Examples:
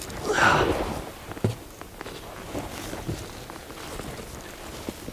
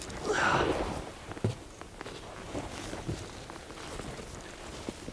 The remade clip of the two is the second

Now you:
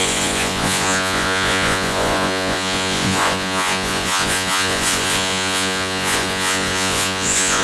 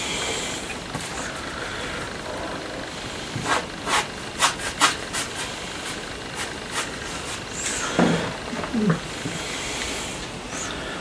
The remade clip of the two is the first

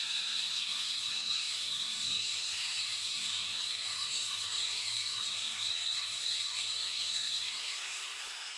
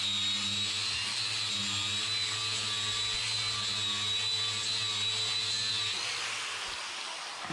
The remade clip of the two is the first